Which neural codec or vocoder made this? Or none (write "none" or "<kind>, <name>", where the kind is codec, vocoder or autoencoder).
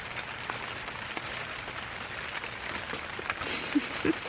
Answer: none